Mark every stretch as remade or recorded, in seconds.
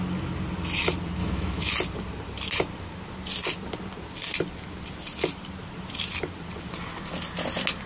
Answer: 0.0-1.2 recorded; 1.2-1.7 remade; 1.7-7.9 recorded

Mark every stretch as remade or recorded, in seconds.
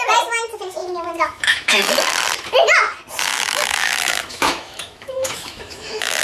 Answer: 0.0-0.8 recorded; 0.8-1.9 remade; 1.9-3.3 recorded; 3.3-6.2 remade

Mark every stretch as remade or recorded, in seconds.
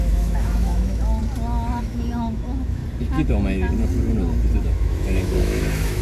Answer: 0.0-1.2 remade; 1.2-1.8 recorded; 1.8-2.8 remade; 2.8-4.6 recorded; 4.6-6.0 remade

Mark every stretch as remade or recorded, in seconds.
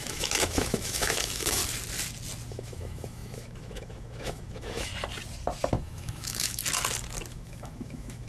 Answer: 0.0-1.6 remade; 1.6-2.5 recorded; 2.5-4.9 remade; 4.9-5.7 recorded; 5.7-6.6 remade; 6.6-7.3 recorded; 7.3-8.3 remade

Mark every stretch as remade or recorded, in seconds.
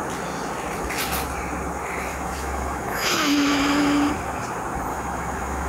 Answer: 0.0-2.1 recorded; 2.1-4.1 remade; 4.1-4.9 recorded; 4.9-5.7 remade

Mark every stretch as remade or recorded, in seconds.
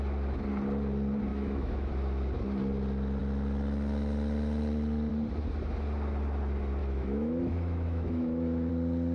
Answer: 0.0-1.3 recorded; 1.3-1.9 remade; 1.9-6.8 recorded; 6.8-8.7 remade; 8.7-9.1 recorded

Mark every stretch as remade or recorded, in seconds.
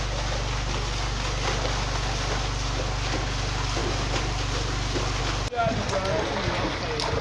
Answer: 0.0-7.2 recorded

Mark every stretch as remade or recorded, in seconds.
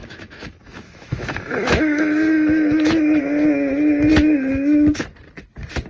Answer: 0.0-3.2 remade; 3.2-5.9 recorded